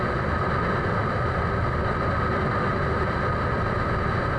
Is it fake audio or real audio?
real